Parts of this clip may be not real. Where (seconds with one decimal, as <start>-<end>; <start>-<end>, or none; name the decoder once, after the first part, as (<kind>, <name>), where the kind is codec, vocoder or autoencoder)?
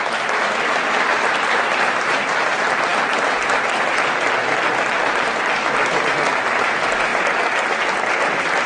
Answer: none